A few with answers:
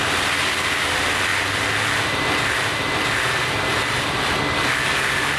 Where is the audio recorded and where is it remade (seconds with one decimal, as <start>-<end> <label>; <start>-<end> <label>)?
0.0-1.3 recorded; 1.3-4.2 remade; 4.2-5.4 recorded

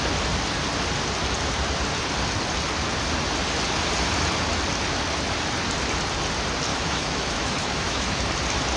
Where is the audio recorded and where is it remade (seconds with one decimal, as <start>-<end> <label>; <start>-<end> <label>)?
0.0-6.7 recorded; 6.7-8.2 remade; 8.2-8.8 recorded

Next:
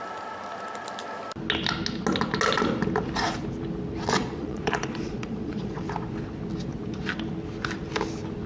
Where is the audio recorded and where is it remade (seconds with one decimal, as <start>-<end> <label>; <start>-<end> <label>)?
0.0-4.2 recorded; 4.2-5.8 remade; 5.8-8.5 recorded

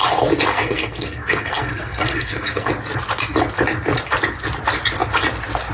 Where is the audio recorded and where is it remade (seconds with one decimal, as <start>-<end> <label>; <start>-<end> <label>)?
0.0-0.5 recorded; 0.5-2.7 remade; 2.7-5.7 recorded

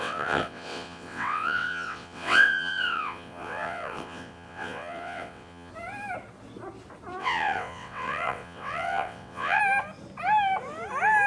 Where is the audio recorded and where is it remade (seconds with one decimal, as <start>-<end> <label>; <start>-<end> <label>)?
0.0-5.7 remade; 5.7-7.2 recorded; 7.2-9.6 remade; 9.6-11.3 recorded